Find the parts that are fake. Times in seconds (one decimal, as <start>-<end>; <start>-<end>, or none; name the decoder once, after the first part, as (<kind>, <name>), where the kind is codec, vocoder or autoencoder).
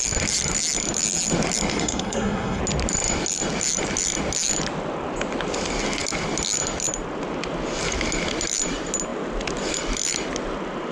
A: 1.7-2.6 (codec, SNAC)